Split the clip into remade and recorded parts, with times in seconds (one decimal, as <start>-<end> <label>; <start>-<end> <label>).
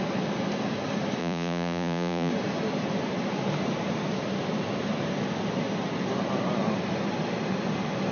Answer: 0.0-1.2 recorded; 1.2-2.3 remade; 2.3-8.1 recorded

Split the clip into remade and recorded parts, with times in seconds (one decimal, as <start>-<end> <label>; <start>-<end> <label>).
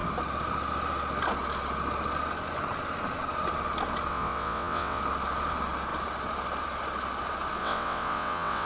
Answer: 0.0-4.1 recorded; 4.1-5.0 remade; 5.0-7.6 recorded; 7.6-8.7 remade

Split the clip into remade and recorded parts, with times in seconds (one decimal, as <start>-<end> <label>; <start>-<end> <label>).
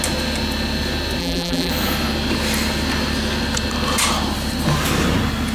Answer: 0.0-1.2 recorded; 1.2-1.7 remade; 1.7-5.5 recorded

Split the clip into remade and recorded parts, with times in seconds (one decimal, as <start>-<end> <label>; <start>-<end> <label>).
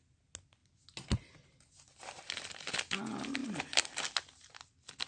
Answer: 0.0-5.1 recorded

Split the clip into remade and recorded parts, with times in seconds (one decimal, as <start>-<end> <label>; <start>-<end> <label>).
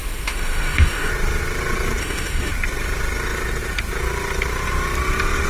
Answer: 0.0-1.1 remade; 1.1-2.0 recorded; 2.0-2.5 remade; 2.5-5.5 recorded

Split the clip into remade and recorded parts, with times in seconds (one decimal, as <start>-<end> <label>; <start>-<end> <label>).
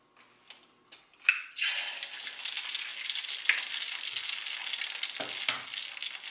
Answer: 0.0-6.3 recorded